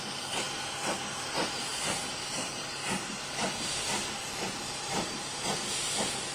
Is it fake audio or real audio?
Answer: real